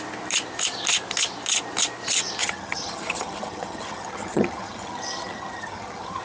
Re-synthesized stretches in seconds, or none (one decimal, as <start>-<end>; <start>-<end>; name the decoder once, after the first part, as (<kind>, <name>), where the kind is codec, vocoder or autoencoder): 2.4-6.2 (vocoder, HiFi-GAN)